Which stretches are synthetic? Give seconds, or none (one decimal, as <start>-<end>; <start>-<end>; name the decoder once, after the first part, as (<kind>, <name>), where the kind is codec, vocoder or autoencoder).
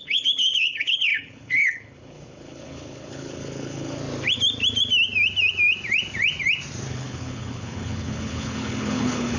0.0-4.0 (codec, HILCodec); 6.9-9.4